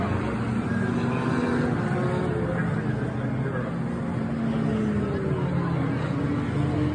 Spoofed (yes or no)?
no